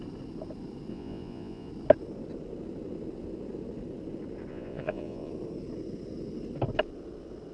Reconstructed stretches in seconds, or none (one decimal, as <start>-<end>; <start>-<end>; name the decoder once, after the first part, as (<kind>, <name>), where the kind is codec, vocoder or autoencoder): 0.9-1.7 (vocoder, Vocos); 4.5-5.3